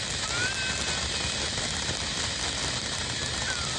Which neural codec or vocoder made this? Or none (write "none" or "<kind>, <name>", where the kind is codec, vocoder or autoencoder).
none